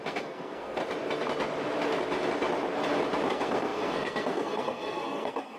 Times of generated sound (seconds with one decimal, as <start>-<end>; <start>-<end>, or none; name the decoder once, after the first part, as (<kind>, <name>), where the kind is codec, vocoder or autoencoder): 0.0-0.8 (codec, SNAC); 3.3-5.6